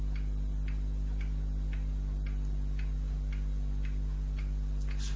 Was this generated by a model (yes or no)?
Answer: no